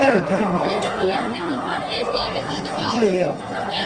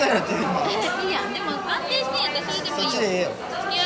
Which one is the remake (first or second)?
first